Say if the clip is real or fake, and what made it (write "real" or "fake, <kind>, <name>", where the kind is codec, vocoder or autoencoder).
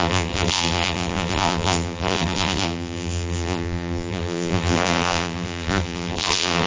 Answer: fake, vocoder, BigVGAN v2